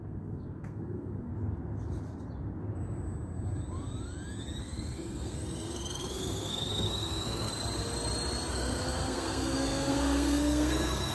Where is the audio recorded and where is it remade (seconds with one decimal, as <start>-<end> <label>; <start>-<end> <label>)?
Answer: 0.0-1.3 remade; 1.3-4.6 recorded; 4.6-7.5 remade; 7.5-8.5 recorded; 8.5-11.1 remade